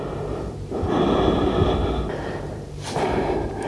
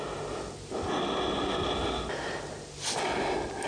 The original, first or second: second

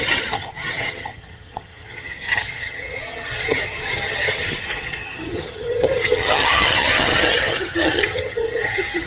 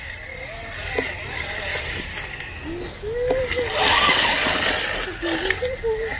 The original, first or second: second